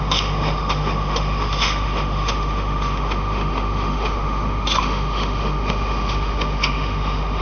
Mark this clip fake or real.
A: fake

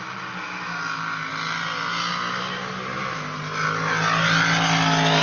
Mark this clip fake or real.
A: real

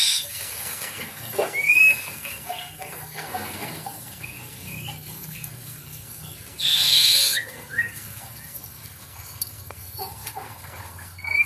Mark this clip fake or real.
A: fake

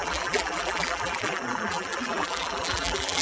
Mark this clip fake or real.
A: fake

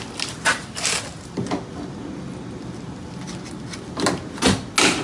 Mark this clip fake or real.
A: real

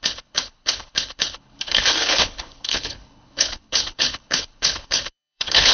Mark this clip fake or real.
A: fake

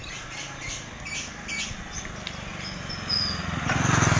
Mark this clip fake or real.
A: real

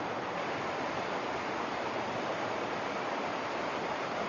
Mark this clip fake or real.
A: real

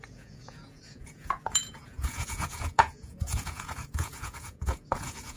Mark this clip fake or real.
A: fake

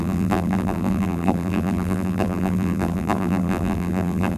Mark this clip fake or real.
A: fake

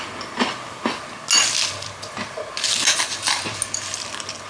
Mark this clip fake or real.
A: real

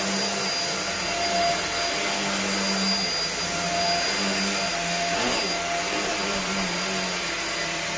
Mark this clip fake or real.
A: real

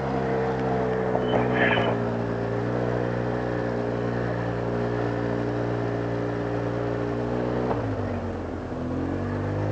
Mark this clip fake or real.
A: real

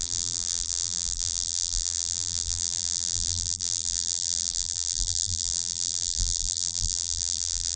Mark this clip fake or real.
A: fake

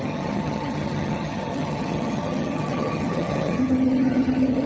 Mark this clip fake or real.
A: fake